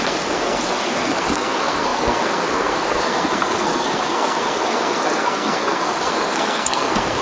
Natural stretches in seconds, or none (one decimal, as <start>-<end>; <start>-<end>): none